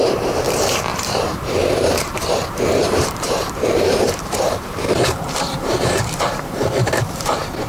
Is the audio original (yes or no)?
no